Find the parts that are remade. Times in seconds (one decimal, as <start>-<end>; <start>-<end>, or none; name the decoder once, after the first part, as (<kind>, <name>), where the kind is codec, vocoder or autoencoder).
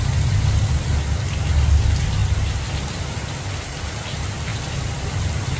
none